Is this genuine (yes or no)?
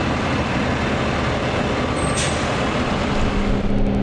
yes